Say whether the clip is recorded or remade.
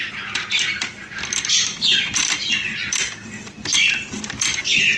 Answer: remade